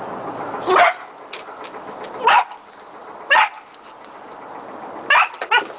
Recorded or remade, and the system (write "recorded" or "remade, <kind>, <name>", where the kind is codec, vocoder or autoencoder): recorded